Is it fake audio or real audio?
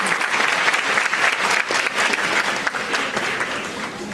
real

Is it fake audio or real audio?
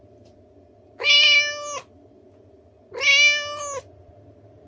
real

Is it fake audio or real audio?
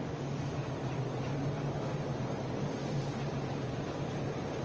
real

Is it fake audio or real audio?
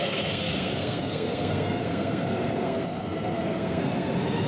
fake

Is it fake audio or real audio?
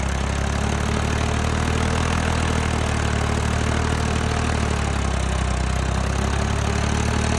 real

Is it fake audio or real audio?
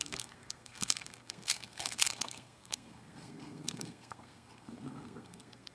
fake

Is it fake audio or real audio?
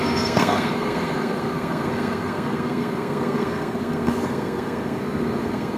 fake